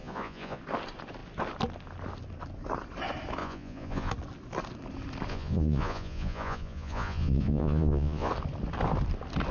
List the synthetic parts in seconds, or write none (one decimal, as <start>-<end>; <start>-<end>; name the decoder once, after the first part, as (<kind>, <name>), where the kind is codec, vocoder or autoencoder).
0.0-0.6 (vocoder, Vocos); 3.4-4.1; 5.3-8.3